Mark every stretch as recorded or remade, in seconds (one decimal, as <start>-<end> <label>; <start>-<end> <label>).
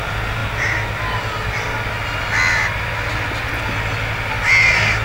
0.0-5.0 recorded